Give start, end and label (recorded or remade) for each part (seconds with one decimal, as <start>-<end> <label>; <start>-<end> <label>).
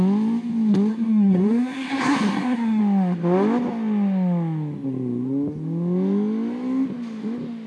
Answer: 0.0-0.9 recorded; 0.9-2.8 remade; 2.8-7.7 recorded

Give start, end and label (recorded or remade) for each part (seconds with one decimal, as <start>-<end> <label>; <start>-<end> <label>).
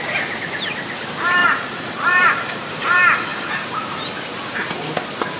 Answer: 0.0-1.4 recorded; 1.4-2.7 remade; 2.7-5.4 recorded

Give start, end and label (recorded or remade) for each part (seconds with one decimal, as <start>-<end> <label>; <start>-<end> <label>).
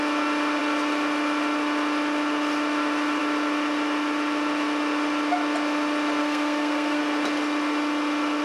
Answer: 0.0-6.2 recorded; 6.2-7.0 remade; 7.0-8.4 recorded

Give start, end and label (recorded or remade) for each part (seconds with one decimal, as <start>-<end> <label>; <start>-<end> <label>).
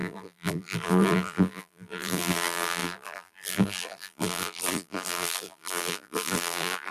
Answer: 0.0-6.9 remade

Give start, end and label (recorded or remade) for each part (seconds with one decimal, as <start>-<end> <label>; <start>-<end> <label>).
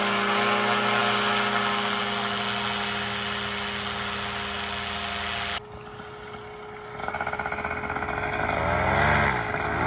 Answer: 0.0-9.9 recorded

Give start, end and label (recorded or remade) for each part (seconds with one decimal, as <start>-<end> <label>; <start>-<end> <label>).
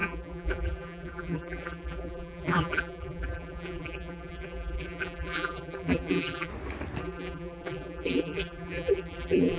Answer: 0.0-6.5 remade; 6.5-7.0 recorded; 7.0-9.6 remade